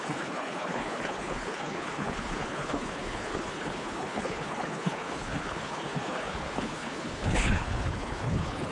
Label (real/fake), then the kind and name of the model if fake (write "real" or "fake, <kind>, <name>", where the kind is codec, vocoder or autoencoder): fake, codec, HILCodec